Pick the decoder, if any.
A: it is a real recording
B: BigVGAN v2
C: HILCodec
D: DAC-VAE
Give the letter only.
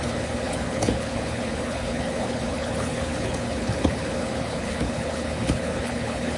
C